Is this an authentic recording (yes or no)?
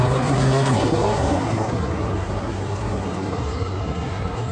no